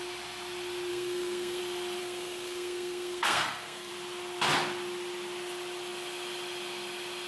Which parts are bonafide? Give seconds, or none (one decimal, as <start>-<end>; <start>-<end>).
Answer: 0.0-0.9; 1.6-2.0; 3.9-7.3